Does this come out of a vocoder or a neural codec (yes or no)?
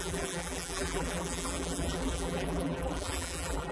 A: yes